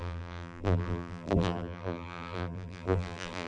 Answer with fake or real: fake